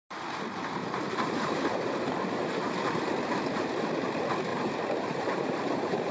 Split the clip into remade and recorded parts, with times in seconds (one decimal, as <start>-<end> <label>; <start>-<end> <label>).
0.0-0.8 recorded; 0.8-2.7 remade; 2.7-4.5 recorded; 4.5-6.1 remade